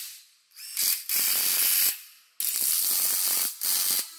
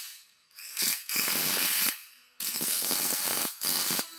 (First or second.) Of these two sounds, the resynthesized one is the second